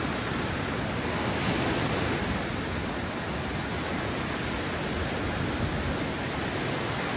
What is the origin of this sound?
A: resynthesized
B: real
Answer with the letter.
B